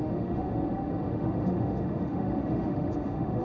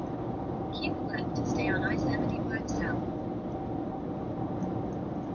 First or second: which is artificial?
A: first